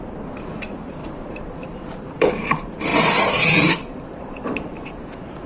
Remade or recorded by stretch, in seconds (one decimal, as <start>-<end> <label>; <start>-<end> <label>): 0.0-2.9 remade; 2.9-3.7 recorded; 3.7-5.5 remade